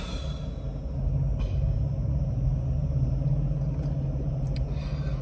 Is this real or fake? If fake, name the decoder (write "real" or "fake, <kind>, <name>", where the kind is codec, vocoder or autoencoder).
real